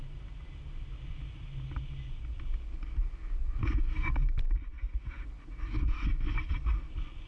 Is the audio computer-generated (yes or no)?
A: no